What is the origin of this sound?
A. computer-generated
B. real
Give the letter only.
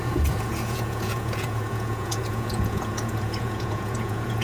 A